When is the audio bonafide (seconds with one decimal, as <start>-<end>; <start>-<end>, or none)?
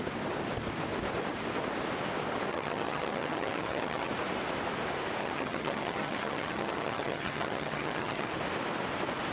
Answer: 0.0-2.5; 4.1-5.2; 8.3-9.3